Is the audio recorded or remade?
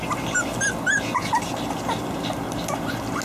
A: recorded